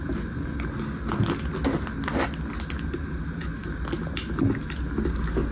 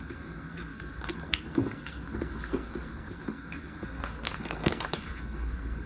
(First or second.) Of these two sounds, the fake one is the second